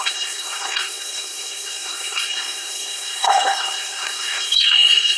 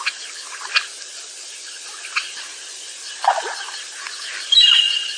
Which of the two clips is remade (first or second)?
first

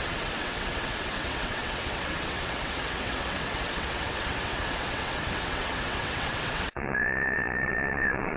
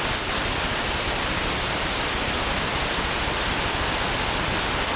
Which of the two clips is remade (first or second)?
first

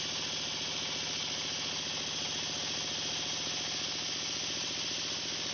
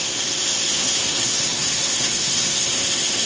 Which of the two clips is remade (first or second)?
second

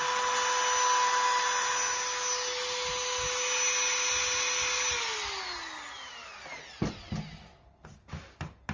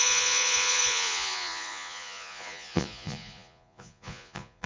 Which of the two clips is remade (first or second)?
second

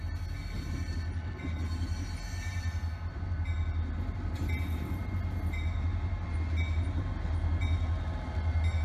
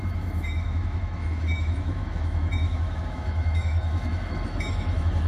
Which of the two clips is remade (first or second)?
second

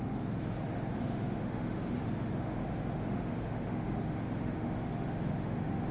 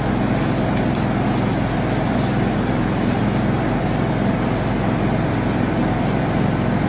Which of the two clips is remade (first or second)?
first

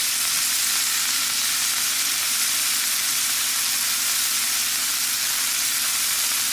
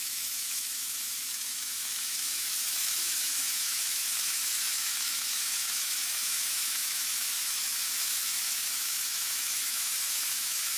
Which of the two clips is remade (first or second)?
second